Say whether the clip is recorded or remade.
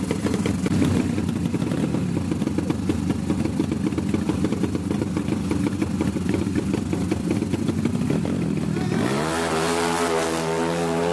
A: recorded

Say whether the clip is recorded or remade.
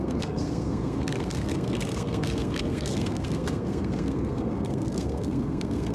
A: remade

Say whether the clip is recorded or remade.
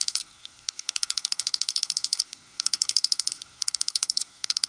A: remade